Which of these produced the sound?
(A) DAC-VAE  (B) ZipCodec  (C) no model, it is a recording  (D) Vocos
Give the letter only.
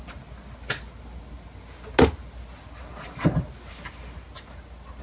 C